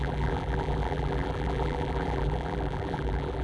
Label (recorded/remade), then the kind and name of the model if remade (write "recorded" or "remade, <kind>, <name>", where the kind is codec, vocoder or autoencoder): remade, vocoder, BigVGAN v2